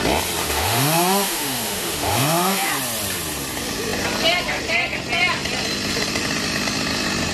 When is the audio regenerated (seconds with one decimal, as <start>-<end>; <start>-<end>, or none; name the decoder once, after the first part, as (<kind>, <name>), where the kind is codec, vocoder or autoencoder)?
0.4-2.7 (autoencoder, DAC-VAE)